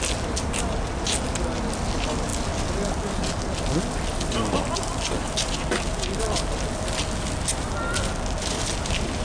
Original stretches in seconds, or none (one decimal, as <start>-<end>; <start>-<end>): 0.0-9.2